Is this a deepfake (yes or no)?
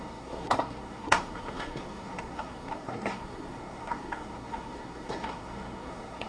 yes